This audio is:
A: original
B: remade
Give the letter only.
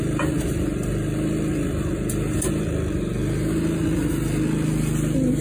A